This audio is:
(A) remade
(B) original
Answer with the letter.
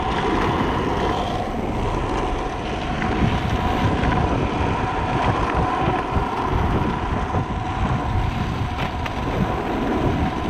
B